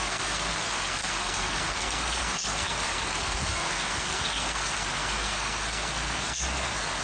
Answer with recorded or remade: remade